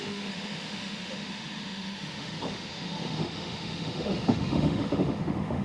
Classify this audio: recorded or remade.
remade